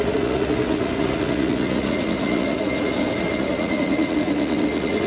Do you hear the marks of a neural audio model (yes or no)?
yes